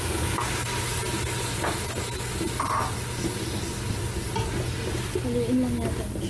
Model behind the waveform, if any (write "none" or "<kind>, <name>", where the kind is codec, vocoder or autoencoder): none